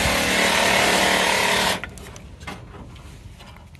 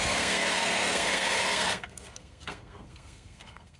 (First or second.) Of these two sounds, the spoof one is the second